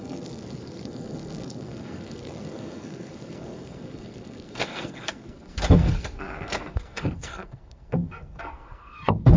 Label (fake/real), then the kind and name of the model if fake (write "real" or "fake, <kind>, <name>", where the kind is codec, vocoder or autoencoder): fake, codec, SNAC